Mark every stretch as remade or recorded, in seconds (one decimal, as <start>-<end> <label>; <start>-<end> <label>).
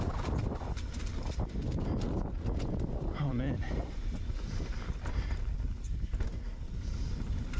0.0-3.3 recorded; 3.3-4.3 remade; 4.3-7.6 recorded